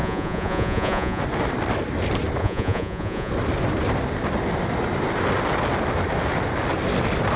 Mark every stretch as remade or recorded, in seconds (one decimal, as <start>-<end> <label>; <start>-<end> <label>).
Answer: 0.0-1.2 remade; 1.2-2.4 recorded; 2.4-3.3 remade; 3.3-7.4 recorded